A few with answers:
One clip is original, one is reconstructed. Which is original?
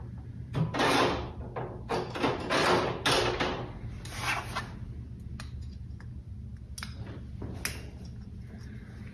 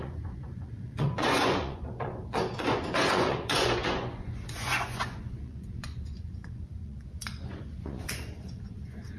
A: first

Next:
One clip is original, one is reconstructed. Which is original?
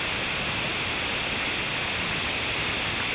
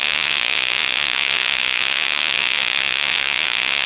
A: first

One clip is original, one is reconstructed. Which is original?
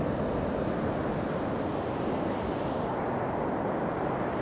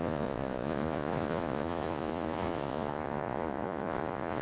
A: first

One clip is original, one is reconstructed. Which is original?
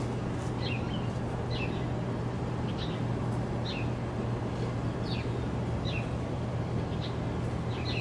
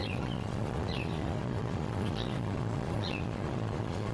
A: first